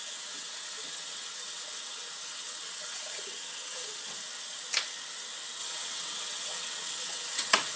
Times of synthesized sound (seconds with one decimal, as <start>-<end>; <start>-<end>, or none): 0.0-4.3; 5.6-7.8